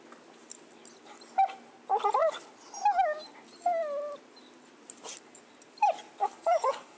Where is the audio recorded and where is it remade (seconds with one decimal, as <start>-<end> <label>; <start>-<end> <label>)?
0.0-6.2 recorded; 6.2-7.0 remade